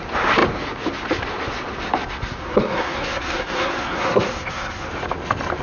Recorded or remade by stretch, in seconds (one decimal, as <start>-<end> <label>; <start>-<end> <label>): 0.0-2.4 recorded; 2.4-4.9 remade; 4.9-5.6 recorded